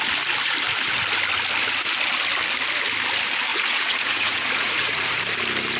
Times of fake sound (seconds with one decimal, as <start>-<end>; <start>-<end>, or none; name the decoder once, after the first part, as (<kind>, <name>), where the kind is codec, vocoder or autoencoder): 3.5-5.2 (vocoder, Vocos)